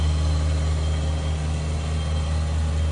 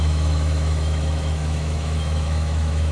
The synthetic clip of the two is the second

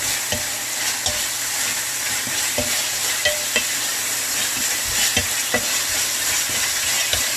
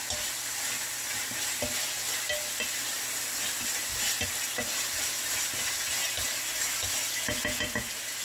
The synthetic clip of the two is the first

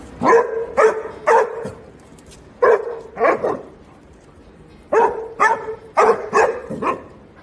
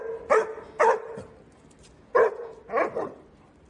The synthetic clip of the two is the first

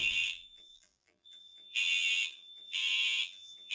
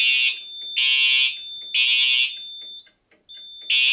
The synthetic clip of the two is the first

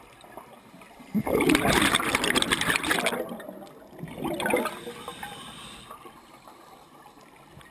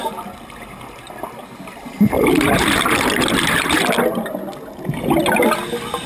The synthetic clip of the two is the first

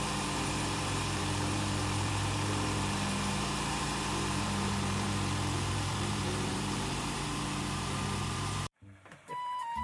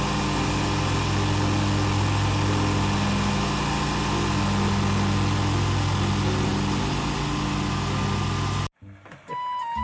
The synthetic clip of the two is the first